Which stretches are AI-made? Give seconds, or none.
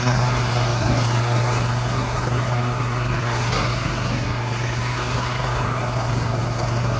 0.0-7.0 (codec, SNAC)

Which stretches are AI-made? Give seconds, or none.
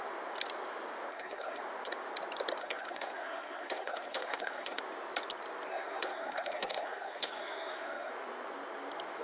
1.1-1.6 (codec, SNAC); 2.6-4.8; 5.7-8.1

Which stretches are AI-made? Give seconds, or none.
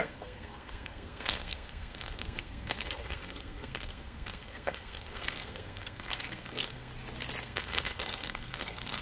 0.0-6.9 (codec, SNAC); 7.4-9.0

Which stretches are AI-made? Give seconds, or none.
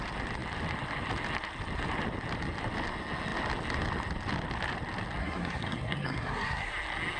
5.2-6.7 (codec, SNAC)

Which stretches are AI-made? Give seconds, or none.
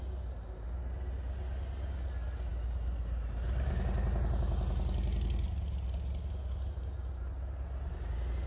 none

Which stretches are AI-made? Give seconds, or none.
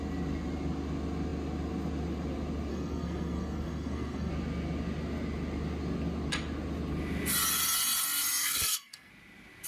2.7-4.3 (codec, SNAC); 8.4-9.1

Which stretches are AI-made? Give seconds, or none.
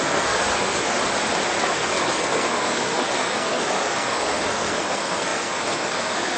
0.0-1.0 (codec, SNAC); 1.6-6.4